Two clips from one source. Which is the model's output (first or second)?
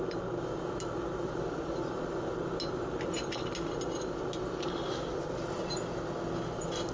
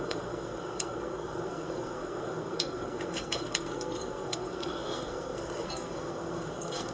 second